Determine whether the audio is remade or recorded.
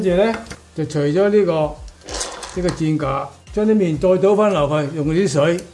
recorded